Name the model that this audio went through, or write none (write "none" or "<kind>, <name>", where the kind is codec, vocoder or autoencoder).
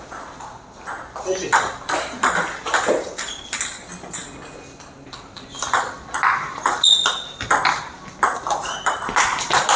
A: none